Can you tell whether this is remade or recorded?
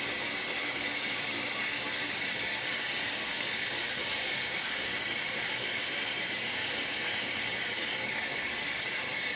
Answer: remade